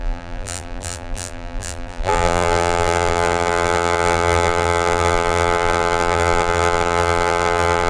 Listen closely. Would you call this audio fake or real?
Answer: fake